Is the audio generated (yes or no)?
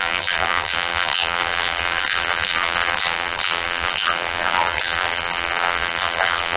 yes